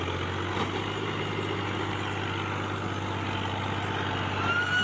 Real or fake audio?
real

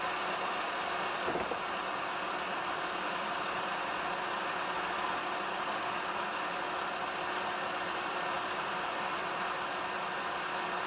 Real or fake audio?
real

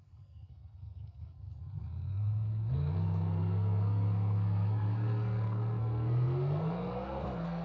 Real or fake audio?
fake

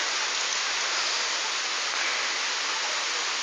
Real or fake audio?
real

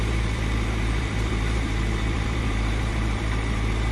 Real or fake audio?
fake